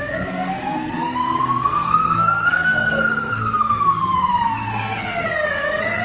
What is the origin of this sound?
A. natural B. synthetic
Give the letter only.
B